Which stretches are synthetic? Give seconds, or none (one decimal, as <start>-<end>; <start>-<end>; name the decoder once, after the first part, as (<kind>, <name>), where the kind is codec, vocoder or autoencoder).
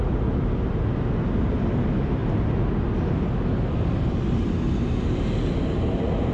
none